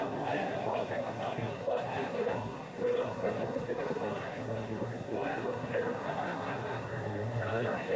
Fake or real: fake